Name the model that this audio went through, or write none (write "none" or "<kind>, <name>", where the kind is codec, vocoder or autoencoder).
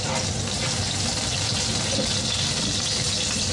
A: none